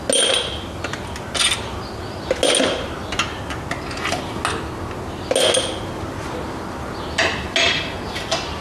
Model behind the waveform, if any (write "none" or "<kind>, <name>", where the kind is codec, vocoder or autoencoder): none